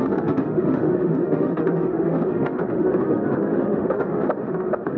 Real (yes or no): no